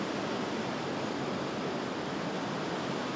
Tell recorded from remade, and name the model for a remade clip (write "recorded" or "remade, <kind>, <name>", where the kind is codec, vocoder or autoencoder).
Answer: recorded